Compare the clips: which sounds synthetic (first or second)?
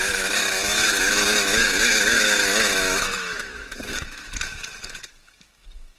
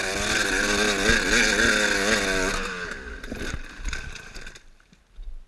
first